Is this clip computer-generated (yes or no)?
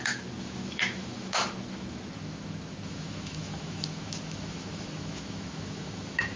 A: yes